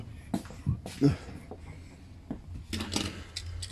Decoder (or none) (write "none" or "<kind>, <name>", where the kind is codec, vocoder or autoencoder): none